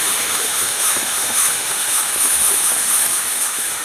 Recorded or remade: remade